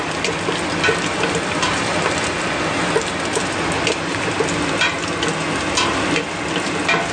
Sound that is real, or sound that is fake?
real